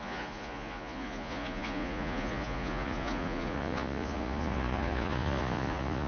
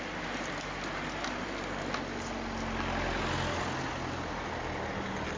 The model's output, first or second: first